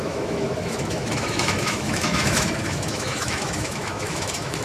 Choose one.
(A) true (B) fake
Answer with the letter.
B